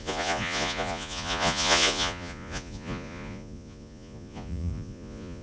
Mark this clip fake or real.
fake